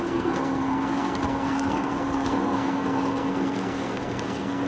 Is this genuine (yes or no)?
no